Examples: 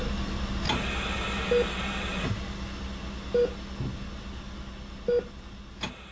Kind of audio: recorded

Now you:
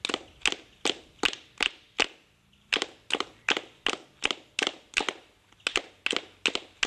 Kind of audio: recorded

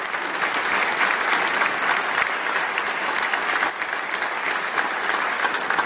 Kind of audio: recorded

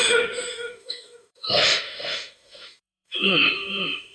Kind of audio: remade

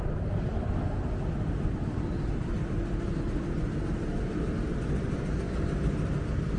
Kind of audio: recorded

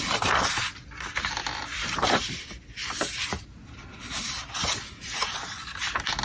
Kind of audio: recorded